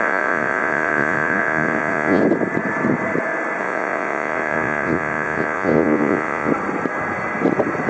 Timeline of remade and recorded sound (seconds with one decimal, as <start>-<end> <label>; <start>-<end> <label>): 0.0-2.2 remade; 2.2-3.6 recorded; 3.6-6.5 remade; 6.5-7.9 recorded